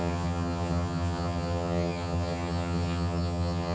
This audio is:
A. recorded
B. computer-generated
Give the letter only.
B